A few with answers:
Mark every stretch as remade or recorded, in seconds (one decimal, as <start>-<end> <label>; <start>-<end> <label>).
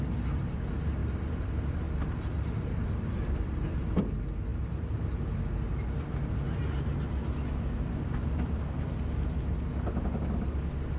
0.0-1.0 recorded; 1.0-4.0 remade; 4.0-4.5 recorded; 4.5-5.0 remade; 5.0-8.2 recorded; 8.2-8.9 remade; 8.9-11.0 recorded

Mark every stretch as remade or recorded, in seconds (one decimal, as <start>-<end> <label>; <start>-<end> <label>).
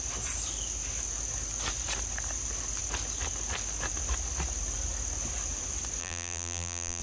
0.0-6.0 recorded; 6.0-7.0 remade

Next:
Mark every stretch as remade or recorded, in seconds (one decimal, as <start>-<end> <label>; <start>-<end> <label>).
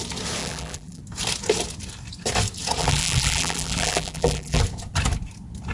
0.0-0.4 recorded; 0.4-1.0 remade; 1.0-2.8 recorded; 2.8-4.6 remade; 4.6-5.7 recorded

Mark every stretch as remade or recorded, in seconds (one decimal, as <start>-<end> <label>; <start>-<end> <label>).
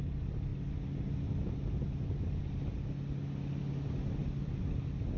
0.0-4.2 recorded; 4.2-4.7 remade; 4.7-5.2 recorded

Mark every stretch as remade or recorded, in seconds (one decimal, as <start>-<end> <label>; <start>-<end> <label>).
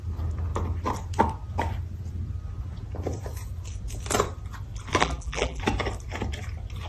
0.0-5.0 recorded; 5.0-5.6 remade; 5.6-6.9 recorded